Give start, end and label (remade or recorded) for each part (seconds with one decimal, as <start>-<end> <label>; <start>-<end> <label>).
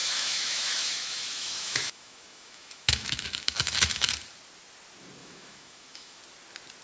0.0-4.1 remade; 4.1-5.2 recorded; 5.2-6.2 remade; 6.2-6.8 recorded